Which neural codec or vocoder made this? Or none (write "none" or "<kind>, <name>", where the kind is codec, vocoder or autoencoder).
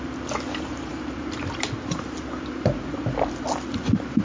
none